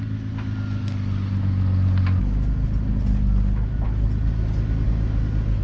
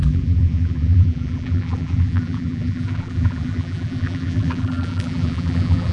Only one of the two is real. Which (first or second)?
first